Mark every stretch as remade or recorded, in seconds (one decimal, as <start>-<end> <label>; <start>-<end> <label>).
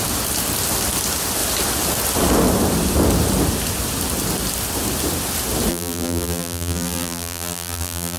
0.0-5.7 recorded; 5.7-8.2 remade